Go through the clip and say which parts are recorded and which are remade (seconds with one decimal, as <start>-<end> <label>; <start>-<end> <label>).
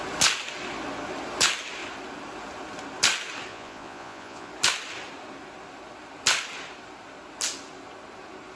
0.0-3.5 recorded; 3.5-4.5 remade; 4.5-8.6 recorded